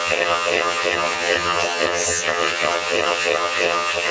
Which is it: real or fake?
fake